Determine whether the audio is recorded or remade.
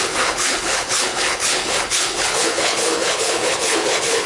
remade